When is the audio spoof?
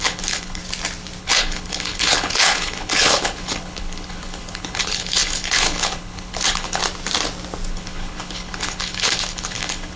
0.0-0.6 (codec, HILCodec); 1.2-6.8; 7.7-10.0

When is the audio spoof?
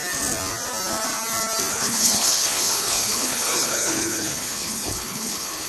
1.7-5.7 (codec, HILCodec)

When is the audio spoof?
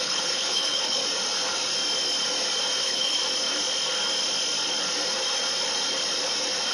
0.0-1.0 (codec, HILCodec); 2.8-3.2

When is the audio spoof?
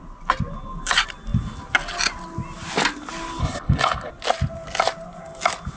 3.4-4.1 (codec, HILCodec)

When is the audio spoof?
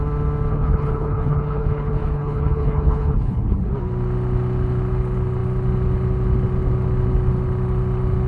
0.5-3.7 (codec, HILCodec)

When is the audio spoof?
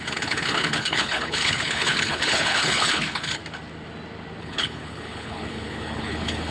0.0-3.4 (codec, HILCodec); 4.4-6.5